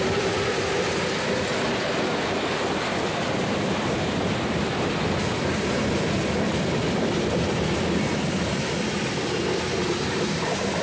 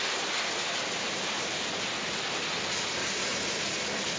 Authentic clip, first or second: second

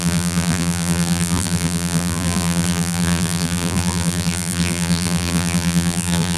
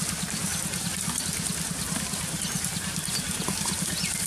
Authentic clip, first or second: second